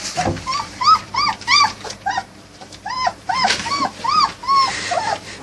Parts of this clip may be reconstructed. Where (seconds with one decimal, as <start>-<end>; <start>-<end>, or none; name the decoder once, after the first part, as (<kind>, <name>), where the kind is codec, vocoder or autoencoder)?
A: 0.5-3.7 (vocoder, BigVGAN v2)